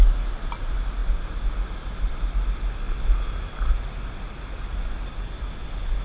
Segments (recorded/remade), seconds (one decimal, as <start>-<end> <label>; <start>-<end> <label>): 0.0-6.0 recorded